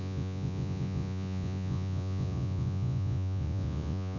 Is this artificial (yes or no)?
yes